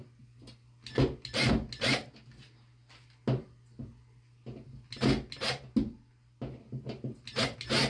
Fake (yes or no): no